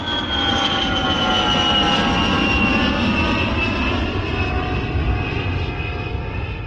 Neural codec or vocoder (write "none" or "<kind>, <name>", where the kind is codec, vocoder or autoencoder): none